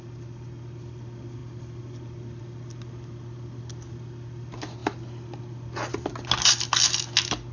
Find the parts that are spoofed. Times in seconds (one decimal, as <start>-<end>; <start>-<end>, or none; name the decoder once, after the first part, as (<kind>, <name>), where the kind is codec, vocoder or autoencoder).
none